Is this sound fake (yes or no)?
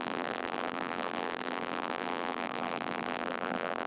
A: yes